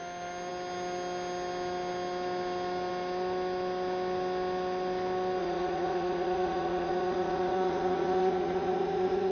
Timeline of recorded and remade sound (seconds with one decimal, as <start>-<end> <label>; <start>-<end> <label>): 0.0-5.4 recorded; 5.4-9.3 remade